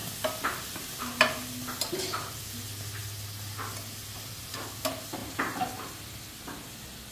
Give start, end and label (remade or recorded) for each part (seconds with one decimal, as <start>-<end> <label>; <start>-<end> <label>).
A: 0.0-5.2 recorded; 5.2-5.8 remade; 5.8-7.1 recorded